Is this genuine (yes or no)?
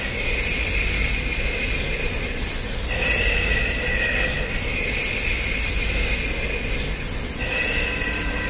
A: yes